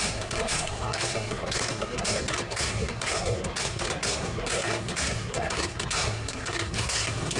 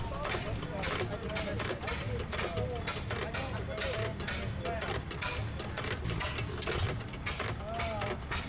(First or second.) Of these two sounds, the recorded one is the second